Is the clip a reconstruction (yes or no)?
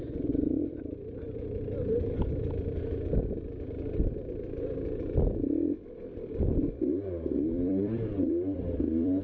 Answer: yes